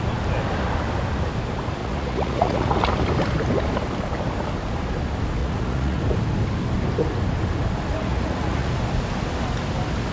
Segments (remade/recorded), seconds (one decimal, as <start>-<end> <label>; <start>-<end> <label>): 0.0-1.8 recorded; 1.8-2.8 remade; 2.8-5.4 recorded; 5.4-6.0 remade; 6.0-8.1 recorded; 8.1-8.7 remade; 8.7-10.1 recorded